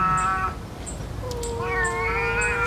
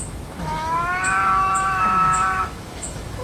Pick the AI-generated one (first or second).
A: second